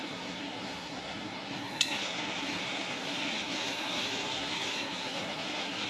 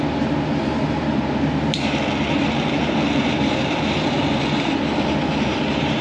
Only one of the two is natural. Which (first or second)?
second